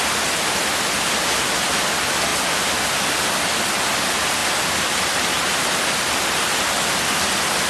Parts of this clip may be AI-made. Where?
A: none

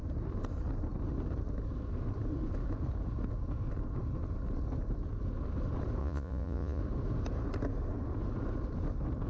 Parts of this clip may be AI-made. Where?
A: 6.0-6.8 (vocoder, Vocos)

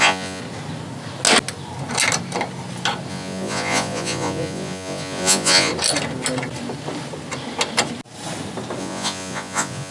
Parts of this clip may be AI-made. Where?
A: 0.0-0.4 (vocoder, Vocos); 3.1-5.7; 8.8-9.9

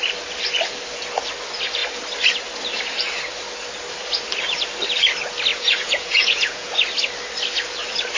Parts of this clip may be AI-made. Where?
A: 5.5-6.7 (vocoder, Vocos)

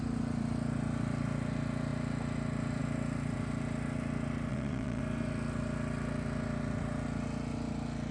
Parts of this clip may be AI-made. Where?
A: 4.5-5.0 (vocoder, Vocos)

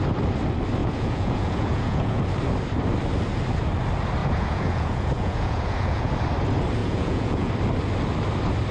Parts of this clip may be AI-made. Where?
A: 0.8-2.2 (vocoder, Vocos); 4.2-6.1; 6.8-7.5

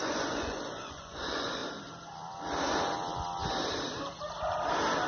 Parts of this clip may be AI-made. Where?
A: 0.0-1.6 (vocoder, Vocos)

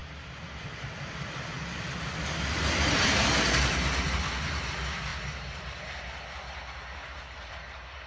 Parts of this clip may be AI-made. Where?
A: none